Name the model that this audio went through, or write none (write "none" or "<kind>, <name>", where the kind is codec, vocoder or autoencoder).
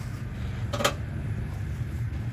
none